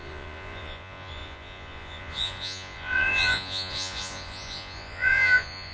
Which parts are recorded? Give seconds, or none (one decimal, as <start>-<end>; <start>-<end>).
none